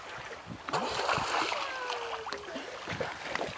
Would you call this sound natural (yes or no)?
yes